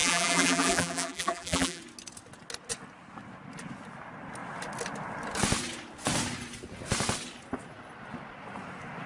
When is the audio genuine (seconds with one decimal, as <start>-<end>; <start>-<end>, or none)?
1.8-9.1